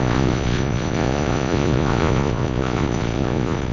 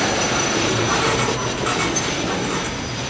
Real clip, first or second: second